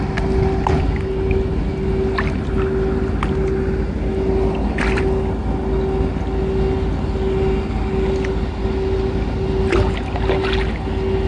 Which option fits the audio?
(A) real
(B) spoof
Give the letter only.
A